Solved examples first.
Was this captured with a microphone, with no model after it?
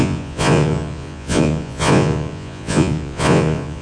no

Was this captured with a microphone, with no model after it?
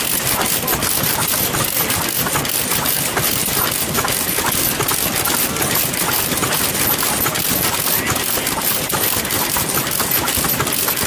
yes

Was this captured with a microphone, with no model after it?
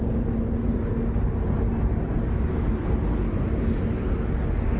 yes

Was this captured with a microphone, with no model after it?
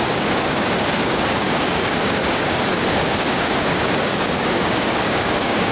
no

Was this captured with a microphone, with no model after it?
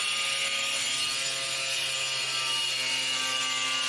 yes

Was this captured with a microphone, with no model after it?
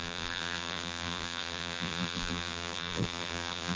no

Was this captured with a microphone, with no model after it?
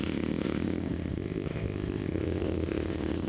no